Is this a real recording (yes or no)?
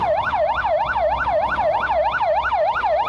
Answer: no